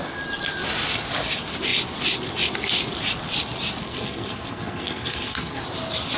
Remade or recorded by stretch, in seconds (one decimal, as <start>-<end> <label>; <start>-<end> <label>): 0.0-3.8 recorded; 3.8-5.6 remade; 5.6-6.2 recorded